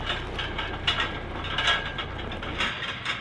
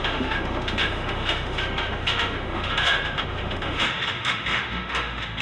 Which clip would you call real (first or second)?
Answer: first